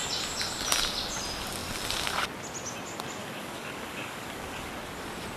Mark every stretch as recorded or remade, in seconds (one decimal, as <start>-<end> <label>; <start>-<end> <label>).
0.0-3.2 recorded; 3.2-4.7 remade; 4.7-5.4 recorded